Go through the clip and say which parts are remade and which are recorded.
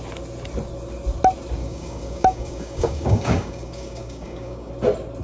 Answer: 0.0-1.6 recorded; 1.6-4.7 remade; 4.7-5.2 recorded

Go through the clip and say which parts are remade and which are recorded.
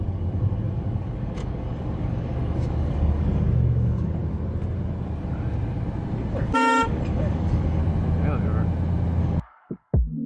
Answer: 0.0-4.2 remade; 4.2-6.3 recorded; 6.3-7.8 remade; 7.8-9.2 recorded; 9.2-10.3 remade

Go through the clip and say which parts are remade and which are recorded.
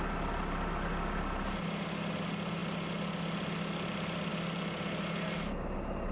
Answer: 0.0-6.1 recorded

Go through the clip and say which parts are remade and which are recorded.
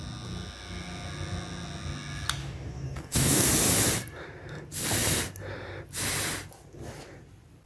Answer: 0.0-2.4 recorded; 2.4-3.5 remade; 3.5-7.7 recorded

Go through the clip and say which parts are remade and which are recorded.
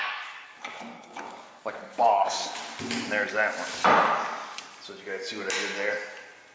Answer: 0.0-2.6 remade; 2.6-6.5 recorded